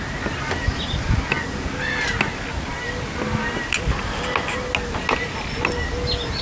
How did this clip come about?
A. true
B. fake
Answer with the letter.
A